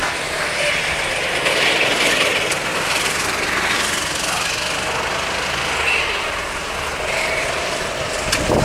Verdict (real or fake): real